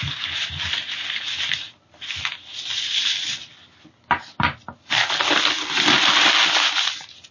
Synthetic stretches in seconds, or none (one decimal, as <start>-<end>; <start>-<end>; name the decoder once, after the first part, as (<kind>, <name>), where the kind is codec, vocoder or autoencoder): none

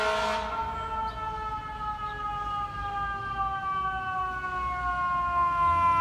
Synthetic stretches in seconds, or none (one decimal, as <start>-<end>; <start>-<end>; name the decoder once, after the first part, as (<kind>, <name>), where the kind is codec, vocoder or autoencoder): none

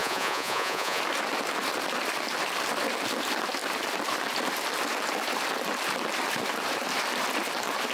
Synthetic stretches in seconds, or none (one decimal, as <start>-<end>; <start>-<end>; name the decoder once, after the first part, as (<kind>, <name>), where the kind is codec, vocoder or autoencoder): 0.0-1.0 (vocoder, Vocos)